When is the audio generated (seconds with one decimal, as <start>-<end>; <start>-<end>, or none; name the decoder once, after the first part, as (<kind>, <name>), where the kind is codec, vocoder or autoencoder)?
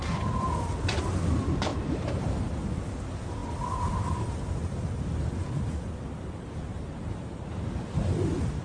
1.7-2.3 (vocoder, BigVGAN v2); 6.7-7.6